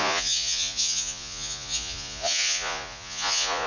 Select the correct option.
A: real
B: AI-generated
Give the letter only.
B